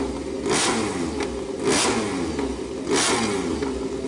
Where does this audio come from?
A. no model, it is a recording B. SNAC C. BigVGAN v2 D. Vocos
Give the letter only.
A